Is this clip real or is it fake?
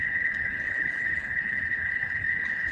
fake